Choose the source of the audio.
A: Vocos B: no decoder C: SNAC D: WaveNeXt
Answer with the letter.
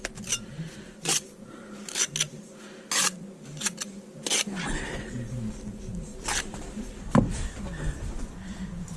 B